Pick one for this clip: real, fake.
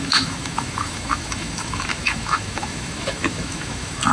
fake